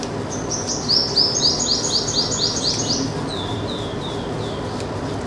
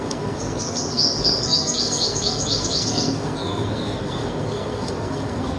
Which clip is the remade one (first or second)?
second